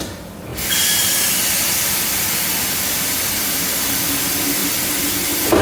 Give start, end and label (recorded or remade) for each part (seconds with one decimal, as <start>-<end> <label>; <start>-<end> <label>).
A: 0.0-5.6 recorded